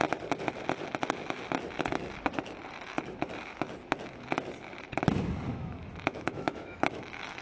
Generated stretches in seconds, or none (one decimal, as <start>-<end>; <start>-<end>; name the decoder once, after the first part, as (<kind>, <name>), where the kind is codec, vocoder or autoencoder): 5.5-7.4 (autoencoder, DAC-VAE)